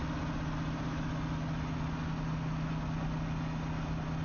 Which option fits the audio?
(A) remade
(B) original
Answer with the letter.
B